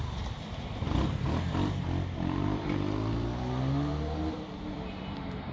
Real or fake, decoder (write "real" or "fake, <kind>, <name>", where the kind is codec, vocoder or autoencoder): fake, vocoder, BigVGAN v2